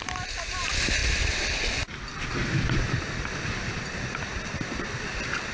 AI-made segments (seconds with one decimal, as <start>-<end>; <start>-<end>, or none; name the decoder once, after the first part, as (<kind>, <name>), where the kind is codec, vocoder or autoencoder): 1.0-1.8 (vocoder, BigVGAN v2)

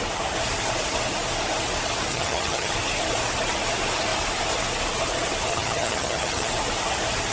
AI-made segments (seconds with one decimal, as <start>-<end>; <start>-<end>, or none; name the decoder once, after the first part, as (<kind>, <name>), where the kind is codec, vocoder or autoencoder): 2.1-2.7 (vocoder, HiFi-GAN); 5.5-6.5

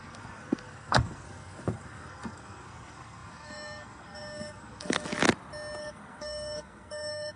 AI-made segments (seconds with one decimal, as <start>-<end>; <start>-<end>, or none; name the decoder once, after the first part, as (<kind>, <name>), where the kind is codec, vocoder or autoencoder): 0.0-5.1 (codec, SNAC); 5.8-7.4

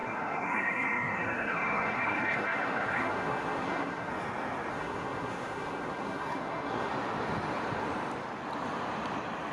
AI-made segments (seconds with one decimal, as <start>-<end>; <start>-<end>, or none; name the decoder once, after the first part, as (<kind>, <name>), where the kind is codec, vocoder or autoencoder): 0.0-4.1 (codec, SNAC); 4.7-6.9

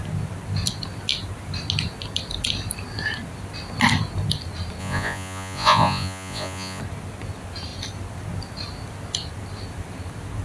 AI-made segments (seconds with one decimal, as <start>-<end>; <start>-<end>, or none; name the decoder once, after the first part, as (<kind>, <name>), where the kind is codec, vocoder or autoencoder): 4.8-6.8 (vocoder, Vocos)

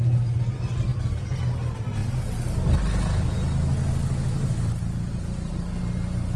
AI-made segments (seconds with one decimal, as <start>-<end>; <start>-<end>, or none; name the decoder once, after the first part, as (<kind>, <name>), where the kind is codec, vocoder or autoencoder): none